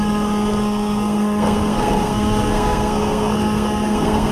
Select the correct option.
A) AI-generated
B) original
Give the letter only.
A